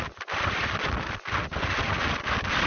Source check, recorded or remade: recorded